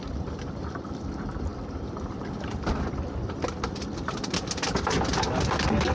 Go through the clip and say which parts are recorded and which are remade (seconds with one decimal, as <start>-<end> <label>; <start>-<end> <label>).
0.0-5.9 recorded